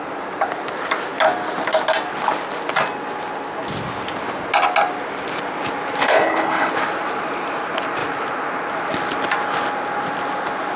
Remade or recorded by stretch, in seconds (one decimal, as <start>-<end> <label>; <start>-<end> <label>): 0.0-6.0 recorded; 6.0-6.7 remade; 6.7-10.8 recorded